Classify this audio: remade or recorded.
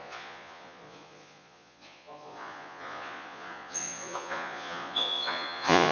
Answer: remade